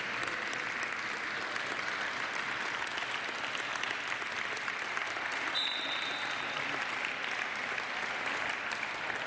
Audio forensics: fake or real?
real